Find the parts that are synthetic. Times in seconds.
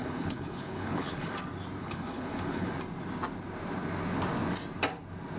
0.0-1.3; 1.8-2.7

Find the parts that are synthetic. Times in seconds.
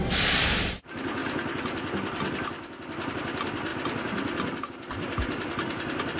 none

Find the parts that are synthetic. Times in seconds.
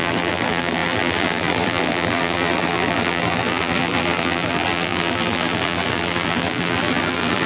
0.0-7.5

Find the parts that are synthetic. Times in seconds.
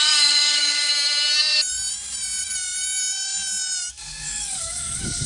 0.0-0.9; 3.9-5.3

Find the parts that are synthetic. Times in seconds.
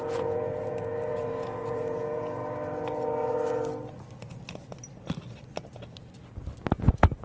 0.0-2.4; 6.7-7.2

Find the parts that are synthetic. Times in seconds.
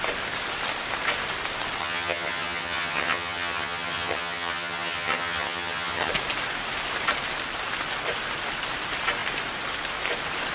1.8-6.1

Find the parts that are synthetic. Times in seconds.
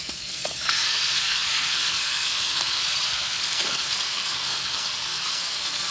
0.0-5.9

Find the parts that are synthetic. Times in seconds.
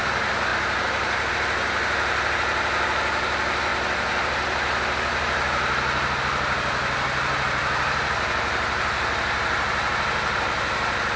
0.5-1.3; 3.7-6.2